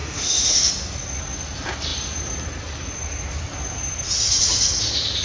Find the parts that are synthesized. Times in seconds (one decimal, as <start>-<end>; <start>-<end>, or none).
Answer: 0.0-0.7